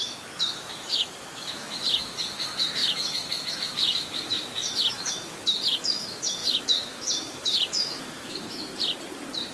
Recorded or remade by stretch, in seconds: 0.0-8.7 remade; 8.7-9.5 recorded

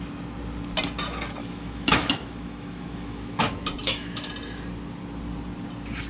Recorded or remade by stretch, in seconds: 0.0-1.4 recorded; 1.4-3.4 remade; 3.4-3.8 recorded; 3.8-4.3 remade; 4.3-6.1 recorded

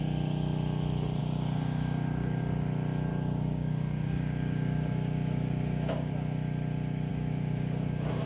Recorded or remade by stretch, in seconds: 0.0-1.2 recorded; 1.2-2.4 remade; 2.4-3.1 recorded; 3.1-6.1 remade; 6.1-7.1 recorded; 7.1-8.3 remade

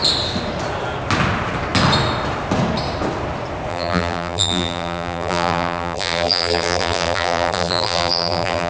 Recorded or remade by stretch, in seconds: 0.0-3.7 recorded; 3.7-8.7 remade

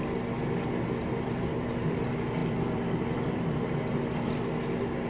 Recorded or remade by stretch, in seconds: 0.0-1.1 recorded; 1.1-2.0 remade; 2.0-2.4 recorded; 2.4-3.7 remade; 3.7-5.1 recorded

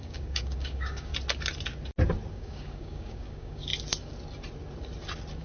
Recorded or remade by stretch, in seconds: 0.0-1.1 remade; 1.1-2.3 recorded; 2.3-3.7 remade; 3.7-5.4 recorded